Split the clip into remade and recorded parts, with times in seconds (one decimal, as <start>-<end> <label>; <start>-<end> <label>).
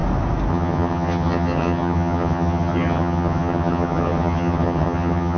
0.0-0.5 recorded; 0.5-5.4 remade